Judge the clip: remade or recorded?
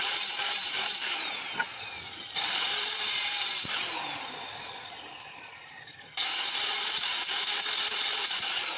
remade